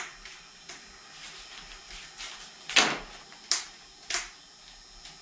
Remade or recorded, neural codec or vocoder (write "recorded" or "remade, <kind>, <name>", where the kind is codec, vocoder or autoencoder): recorded